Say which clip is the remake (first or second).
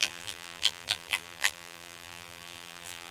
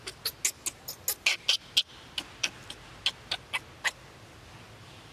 first